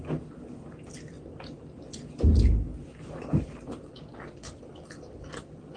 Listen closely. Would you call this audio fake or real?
real